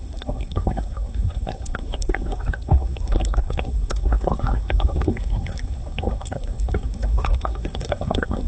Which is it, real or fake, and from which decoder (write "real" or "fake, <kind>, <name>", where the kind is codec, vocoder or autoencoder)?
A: fake, codec, SNAC